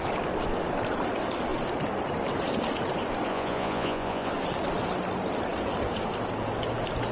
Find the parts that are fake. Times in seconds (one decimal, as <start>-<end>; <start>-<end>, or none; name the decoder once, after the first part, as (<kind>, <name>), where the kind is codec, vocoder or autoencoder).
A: 3.3-4.3 (vocoder, Vocos)